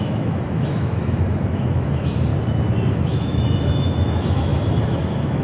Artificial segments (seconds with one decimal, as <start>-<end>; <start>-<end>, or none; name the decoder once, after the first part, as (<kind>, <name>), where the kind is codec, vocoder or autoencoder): 0.0-2.3 (autoencoder, DAC-VAE); 2.9-5.4